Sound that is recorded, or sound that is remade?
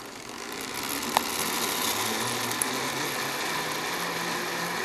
recorded